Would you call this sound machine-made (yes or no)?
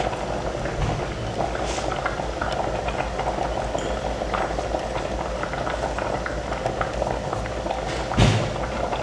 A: no